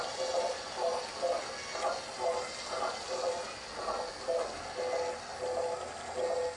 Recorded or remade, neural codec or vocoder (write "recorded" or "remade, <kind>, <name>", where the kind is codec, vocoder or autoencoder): recorded